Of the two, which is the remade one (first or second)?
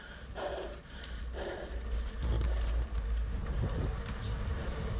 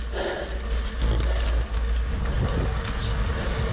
first